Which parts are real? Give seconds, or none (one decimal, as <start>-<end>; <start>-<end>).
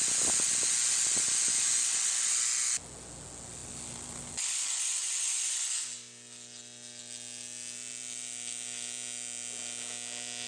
0.0-10.5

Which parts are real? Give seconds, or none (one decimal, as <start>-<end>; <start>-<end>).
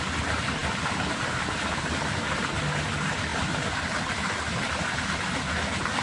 0.0-6.0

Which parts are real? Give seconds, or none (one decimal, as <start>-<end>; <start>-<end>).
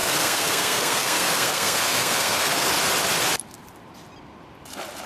2.7-5.1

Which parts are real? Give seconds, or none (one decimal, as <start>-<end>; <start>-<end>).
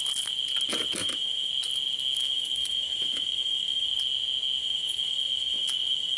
0.0-1.0; 1.5-2.2; 3.9-4.6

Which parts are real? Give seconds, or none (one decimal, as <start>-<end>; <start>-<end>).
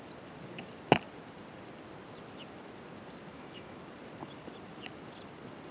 0.0-3.3; 3.8-5.7